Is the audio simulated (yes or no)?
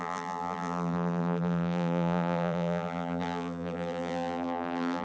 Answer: yes